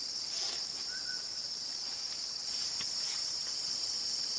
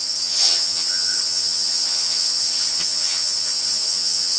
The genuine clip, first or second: first